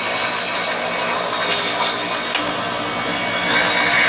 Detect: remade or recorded recorded